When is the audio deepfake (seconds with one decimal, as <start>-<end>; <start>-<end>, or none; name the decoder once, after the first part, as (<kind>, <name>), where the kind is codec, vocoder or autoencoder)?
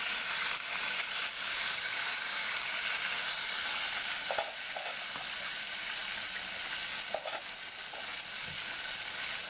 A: 1.3-2.8 (codec, DAC)